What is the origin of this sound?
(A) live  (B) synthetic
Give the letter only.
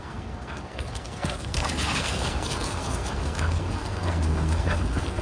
B